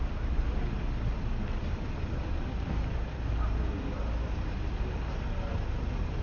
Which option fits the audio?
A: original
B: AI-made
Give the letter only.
A